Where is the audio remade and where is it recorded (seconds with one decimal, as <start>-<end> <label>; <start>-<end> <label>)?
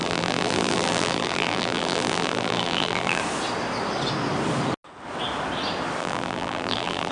0.0-3.2 remade; 3.2-6.0 recorded; 6.0-7.1 remade